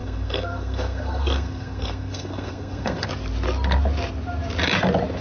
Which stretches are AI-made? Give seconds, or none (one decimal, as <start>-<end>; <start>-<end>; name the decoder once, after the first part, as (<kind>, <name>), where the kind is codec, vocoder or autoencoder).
0.0-3.1 (codec, SNAC)